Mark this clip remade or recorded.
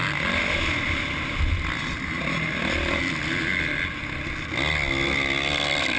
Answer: recorded